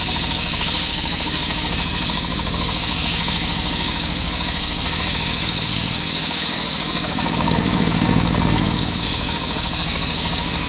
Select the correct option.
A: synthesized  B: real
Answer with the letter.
A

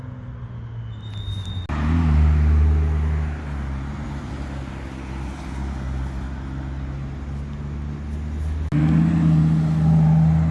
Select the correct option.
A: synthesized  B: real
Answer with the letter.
B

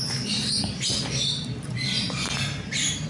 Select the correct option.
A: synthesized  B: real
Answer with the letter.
B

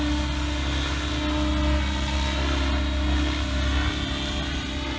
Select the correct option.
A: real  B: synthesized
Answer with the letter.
A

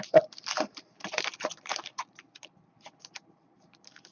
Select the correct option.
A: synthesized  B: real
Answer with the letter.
A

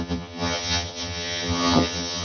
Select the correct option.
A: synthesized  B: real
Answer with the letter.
A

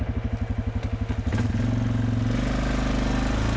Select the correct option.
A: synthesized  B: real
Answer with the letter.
B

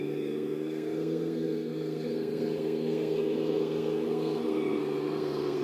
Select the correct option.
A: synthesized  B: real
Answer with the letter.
A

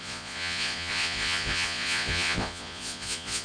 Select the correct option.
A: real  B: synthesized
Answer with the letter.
B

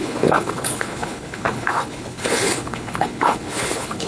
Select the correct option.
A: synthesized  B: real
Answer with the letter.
A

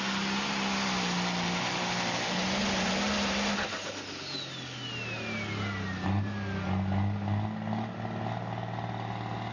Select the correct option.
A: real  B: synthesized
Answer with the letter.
A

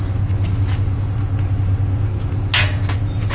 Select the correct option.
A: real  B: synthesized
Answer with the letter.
A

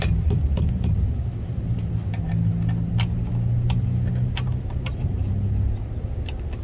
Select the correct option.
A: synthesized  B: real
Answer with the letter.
B